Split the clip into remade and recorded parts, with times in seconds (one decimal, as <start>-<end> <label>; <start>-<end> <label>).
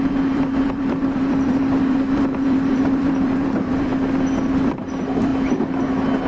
0.0-3.9 remade; 3.9-4.4 recorded; 4.4-5.3 remade; 5.3-6.3 recorded